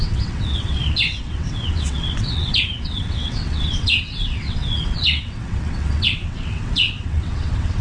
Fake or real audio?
fake